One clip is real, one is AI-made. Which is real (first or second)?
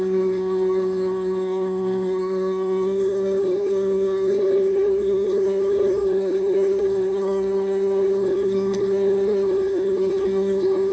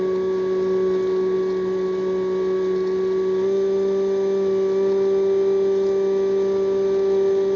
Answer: second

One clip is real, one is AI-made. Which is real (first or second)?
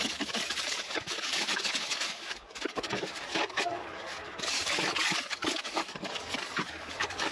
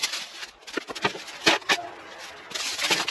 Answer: second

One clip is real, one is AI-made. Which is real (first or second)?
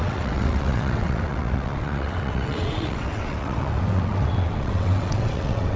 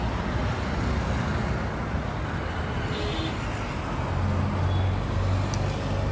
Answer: second